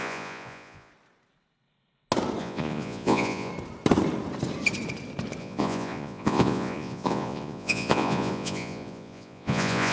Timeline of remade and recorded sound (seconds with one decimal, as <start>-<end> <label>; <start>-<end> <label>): 0.0-0.9 remade; 0.9-2.4 recorded; 2.4-3.5 remade; 3.5-5.4 recorded; 5.4-9.9 remade

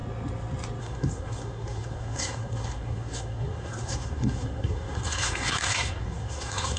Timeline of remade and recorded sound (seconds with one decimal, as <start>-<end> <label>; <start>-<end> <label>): 0.0-0.8 recorded; 0.8-6.8 remade

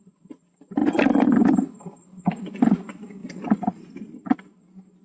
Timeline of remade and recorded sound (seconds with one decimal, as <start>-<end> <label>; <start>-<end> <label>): 0.0-5.0 recorded

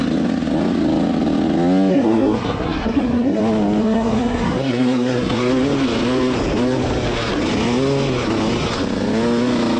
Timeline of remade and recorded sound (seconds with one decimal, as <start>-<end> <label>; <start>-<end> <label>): 0.0-1.9 recorded; 1.9-3.4 remade; 3.4-3.8 recorded; 3.8-5.5 remade; 5.5-9.8 recorded

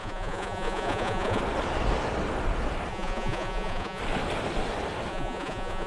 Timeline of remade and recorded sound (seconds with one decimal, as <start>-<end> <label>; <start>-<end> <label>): 0.0-1.4 remade; 1.4-2.9 recorded; 2.9-4.0 remade; 4.0-5.1 recorded; 5.1-5.9 remade

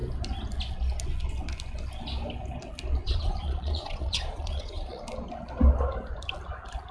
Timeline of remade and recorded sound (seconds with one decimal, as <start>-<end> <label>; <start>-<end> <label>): 0.0-3.0 recorded; 3.0-5.0 remade; 5.0-6.9 recorded

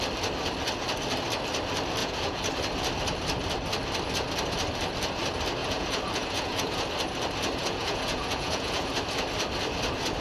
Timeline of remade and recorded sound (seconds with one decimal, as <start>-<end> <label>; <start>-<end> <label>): 0.0-2.0 recorded; 2.0-2.5 remade; 2.5-5.6 recorded; 5.6-6.8 remade; 6.8-7.6 recorded; 7.6-8.9 remade; 8.9-10.2 recorded